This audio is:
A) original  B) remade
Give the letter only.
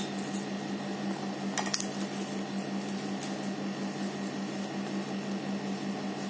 A